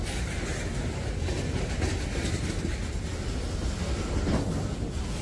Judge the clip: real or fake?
real